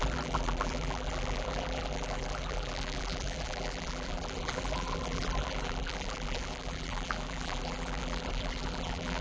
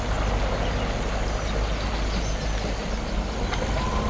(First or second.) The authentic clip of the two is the second